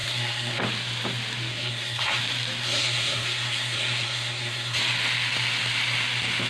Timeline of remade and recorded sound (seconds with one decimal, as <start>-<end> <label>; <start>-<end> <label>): 0.0-0.6 remade; 0.6-1.5 recorded; 1.5-2.2 remade; 2.2-2.6 recorded; 2.6-4.8 remade; 4.8-6.5 recorded